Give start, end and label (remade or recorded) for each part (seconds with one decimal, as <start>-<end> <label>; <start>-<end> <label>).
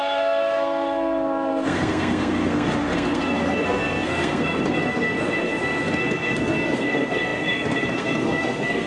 0.0-8.9 remade